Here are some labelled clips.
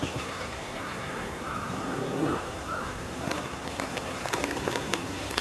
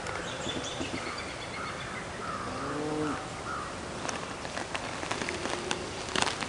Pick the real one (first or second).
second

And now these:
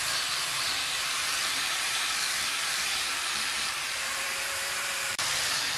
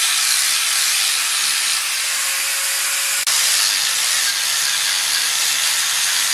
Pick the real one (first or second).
second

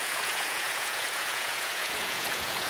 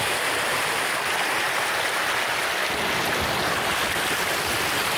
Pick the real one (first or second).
second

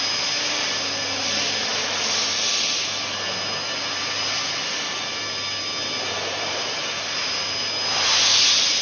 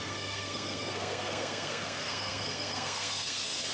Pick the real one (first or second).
first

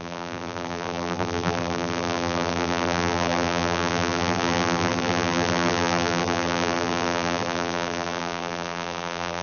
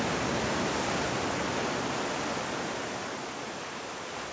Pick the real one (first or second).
second